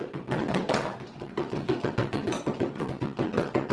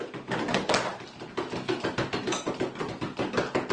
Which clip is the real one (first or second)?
second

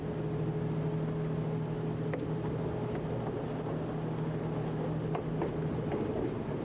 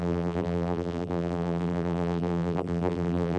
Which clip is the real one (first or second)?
first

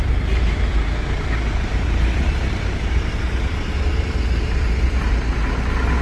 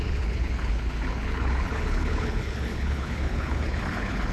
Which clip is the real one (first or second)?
first